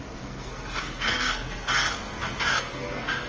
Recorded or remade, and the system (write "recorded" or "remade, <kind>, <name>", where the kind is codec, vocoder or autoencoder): remade, codec, SNAC